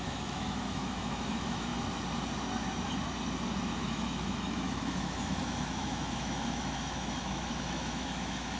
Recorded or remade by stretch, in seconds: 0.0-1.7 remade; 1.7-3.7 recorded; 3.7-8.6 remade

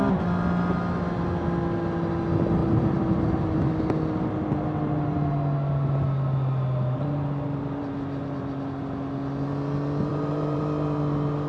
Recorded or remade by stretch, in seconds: 0.0-2.6 recorded; 2.6-3.6 remade; 3.6-10.1 recorded; 10.1-10.6 remade; 10.6-11.5 recorded

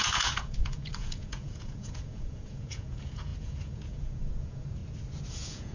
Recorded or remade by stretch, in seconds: 0.0-4.8 remade; 4.8-5.3 recorded; 5.3-5.7 remade